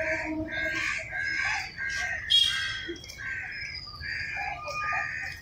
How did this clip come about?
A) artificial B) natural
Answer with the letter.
B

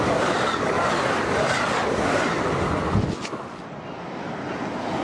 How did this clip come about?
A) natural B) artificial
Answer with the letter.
A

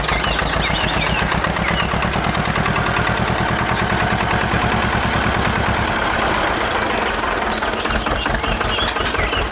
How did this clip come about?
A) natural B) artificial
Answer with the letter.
A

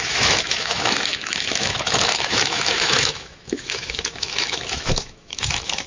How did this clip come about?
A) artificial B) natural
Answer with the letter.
A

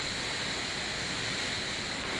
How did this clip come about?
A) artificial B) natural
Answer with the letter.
B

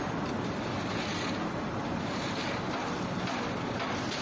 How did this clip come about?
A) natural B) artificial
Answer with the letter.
A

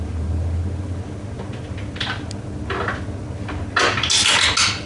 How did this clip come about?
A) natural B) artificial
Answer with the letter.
A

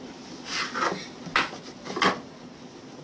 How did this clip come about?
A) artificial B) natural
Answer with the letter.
B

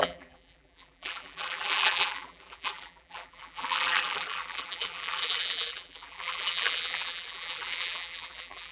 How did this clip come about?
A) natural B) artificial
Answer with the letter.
B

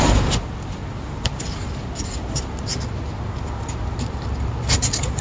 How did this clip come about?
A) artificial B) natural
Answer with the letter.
B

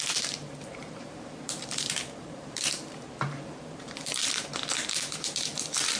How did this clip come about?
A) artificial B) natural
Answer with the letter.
A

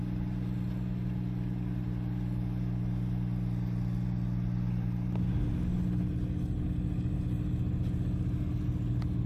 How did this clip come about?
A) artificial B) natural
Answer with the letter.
B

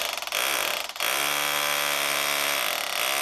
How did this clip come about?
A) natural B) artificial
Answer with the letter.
A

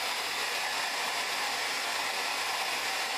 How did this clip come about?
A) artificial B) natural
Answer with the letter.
B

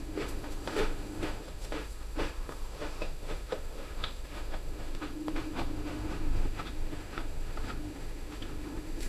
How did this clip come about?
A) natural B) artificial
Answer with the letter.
B